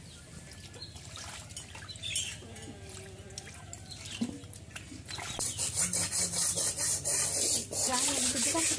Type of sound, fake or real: real